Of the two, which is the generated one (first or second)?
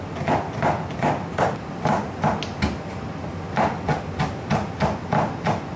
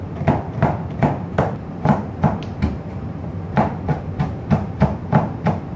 second